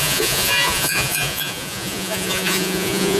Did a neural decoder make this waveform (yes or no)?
yes